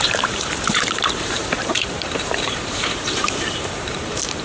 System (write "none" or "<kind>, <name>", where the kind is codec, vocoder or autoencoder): vocoder, BigVGAN v2